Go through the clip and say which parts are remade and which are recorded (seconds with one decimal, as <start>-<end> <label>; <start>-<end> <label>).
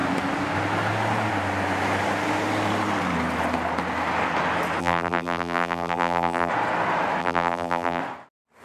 0.0-4.8 recorded; 4.8-6.5 remade; 6.5-7.2 recorded; 7.2-8.0 remade; 8.0-8.6 recorded